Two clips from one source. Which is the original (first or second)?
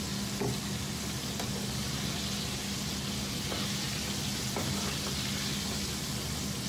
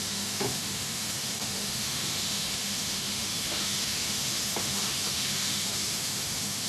first